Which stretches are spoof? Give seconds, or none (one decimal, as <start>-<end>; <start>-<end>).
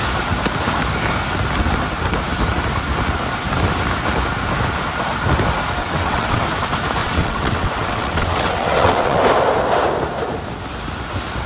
5.8-6.4; 7.0-9.2